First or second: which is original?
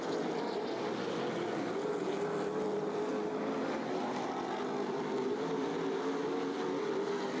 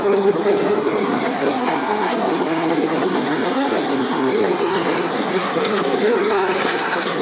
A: first